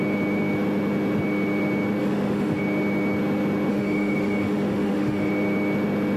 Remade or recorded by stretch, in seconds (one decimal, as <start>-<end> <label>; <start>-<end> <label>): 0.0-2.0 recorded; 2.0-2.6 remade; 2.6-3.7 recorded; 3.7-5.3 remade; 5.3-6.2 recorded